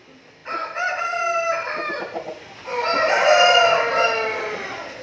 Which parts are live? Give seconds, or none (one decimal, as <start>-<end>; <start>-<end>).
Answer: 0.0-5.0